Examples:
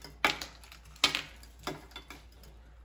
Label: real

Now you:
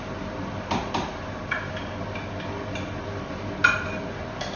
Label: real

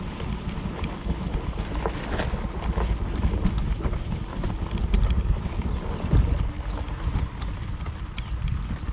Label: real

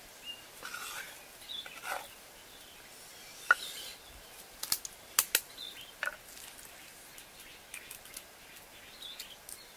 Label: real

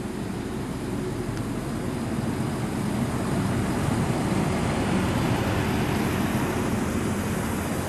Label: real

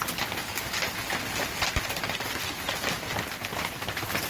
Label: real